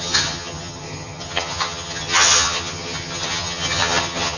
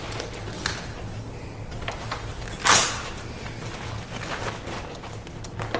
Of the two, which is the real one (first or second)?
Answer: second